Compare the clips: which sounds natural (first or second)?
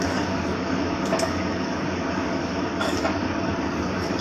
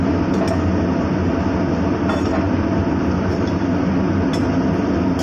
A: second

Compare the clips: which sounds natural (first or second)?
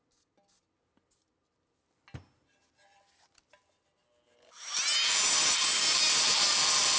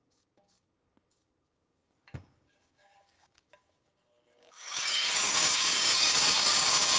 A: first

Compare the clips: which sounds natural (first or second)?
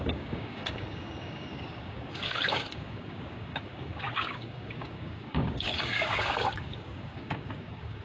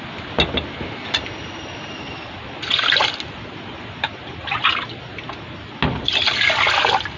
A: second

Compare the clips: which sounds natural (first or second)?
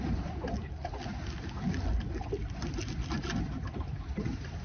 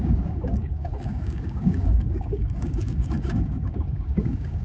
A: first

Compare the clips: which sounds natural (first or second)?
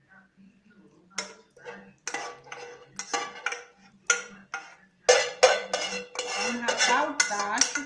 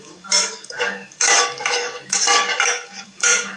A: first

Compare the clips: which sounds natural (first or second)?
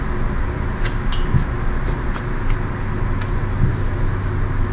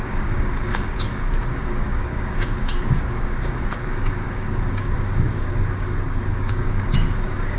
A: first